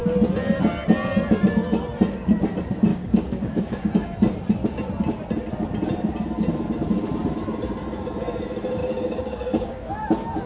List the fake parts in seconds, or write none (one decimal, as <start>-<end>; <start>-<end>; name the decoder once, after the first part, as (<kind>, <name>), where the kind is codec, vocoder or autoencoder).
2.9-3.9 (codec, DAC); 8.8-9.9